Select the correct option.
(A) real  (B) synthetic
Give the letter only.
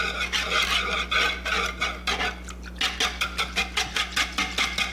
A